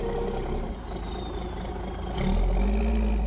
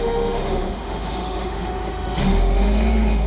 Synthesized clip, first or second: second